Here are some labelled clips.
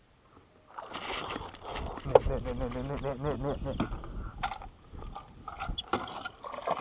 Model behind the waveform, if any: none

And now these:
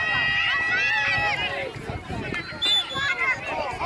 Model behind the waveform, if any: none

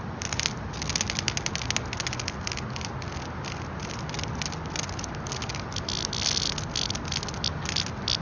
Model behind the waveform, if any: none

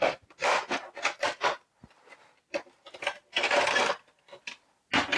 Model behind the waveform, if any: none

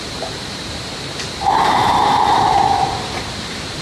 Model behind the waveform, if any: vocoder, BigVGAN v2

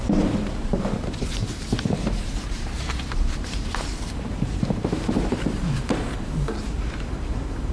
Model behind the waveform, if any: vocoder, BigVGAN v2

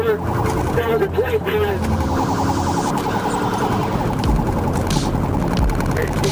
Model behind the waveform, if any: none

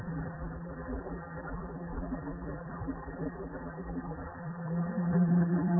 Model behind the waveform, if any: vocoder, BigVGAN v2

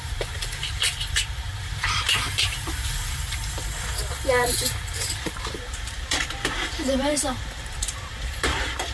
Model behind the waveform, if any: vocoder, BigVGAN v2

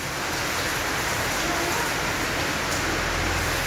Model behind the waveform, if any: none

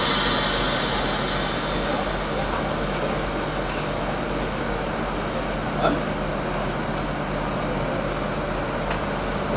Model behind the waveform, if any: none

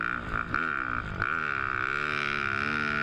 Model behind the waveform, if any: none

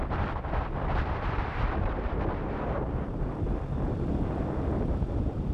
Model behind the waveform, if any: vocoder, BigVGAN v2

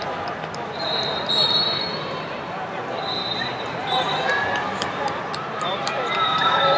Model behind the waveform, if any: vocoder, BigVGAN v2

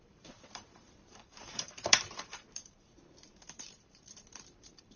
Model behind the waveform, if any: vocoder, BigVGAN v2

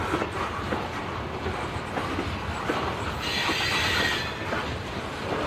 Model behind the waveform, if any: vocoder, BigVGAN v2